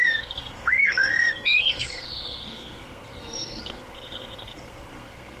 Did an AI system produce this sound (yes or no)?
yes